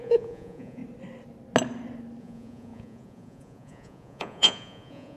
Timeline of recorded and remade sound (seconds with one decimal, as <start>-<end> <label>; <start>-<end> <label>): 0.0-0.8 remade; 0.8-2.2 recorded; 2.2-5.2 remade